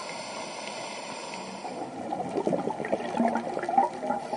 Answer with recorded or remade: recorded